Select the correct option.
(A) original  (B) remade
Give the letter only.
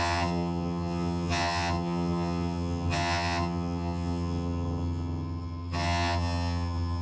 B